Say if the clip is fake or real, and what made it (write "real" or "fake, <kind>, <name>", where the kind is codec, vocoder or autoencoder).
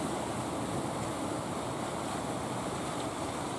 real